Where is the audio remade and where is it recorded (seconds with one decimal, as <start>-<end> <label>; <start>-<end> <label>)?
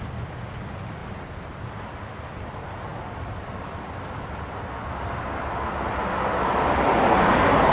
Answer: 0.0-7.7 recorded